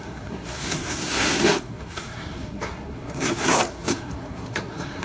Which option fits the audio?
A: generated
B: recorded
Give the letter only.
A